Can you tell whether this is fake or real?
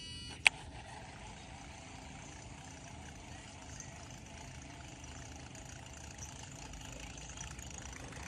real